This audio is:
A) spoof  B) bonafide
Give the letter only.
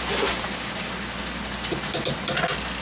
B